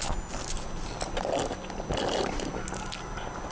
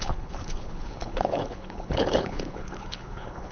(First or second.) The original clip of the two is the first